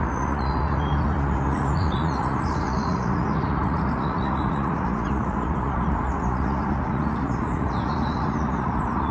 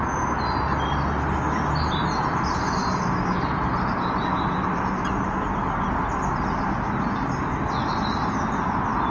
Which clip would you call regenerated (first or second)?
first